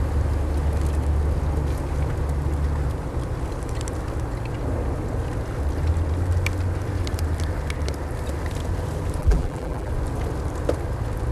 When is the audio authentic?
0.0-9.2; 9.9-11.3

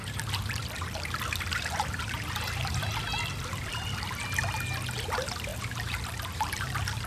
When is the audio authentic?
3.0-5.5

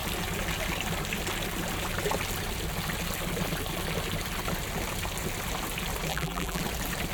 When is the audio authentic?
0.0-6.1; 6.6-7.1

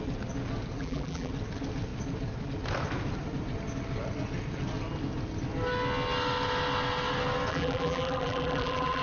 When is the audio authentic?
0.0-0.8; 1.3-7.5

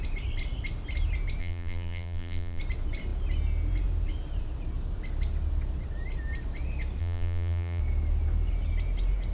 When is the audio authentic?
0.0-1.4; 2.6-7.0; 7.8-9.3